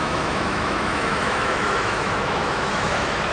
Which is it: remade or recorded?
remade